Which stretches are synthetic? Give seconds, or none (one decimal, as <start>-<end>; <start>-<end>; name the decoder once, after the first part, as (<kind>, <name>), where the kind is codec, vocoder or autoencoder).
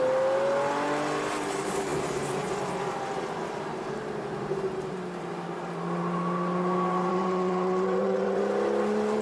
7.1-8.4 (vocoder, WaveNeXt)